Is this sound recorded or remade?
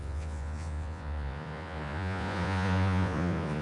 remade